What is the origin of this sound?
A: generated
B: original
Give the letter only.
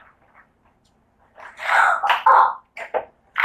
B